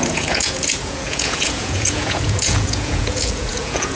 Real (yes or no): no